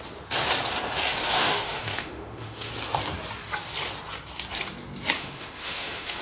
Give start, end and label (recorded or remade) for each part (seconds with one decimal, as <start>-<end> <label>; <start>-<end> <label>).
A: 0.0-1.1 recorded; 1.1-2.7 remade; 2.7-5.2 recorded; 5.2-6.2 remade

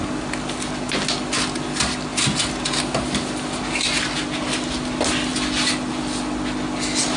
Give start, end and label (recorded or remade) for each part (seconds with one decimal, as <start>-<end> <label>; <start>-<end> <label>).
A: 0.0-7.2 recorded

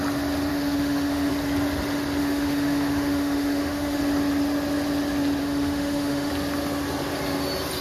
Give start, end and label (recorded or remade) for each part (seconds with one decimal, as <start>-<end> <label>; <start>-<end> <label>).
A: 0.0-0.5 recorded; 0.5-1.3 remade; 1.3-2.2 recorded; 2.2-4.0 remade; 4.0-5.4 recorded; 5.4-6.3 remade; 6.3-7.8 recorded

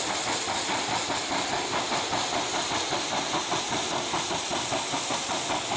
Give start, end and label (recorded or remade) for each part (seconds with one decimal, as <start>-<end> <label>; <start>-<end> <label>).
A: 0.0-5.8 recorded

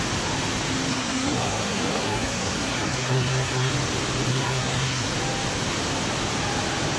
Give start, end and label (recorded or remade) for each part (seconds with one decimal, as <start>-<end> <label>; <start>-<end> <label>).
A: 0.0-0.9 recorded; 0.9-3.7 remade; 3.7-4.3 recorded; 4.3-5.1 remade; 5.1-7.0 recorded

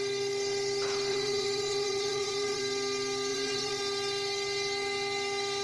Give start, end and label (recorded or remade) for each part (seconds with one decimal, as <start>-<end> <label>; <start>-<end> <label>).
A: 0.0-1.1 recorded; 1.1-2.6 remade; 2.6-3.3 recorded; 3.3-3.8 remade; 3.8-5.6 recorded